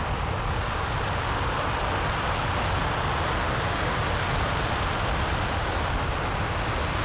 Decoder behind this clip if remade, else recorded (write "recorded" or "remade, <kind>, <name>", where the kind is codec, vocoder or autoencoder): recorded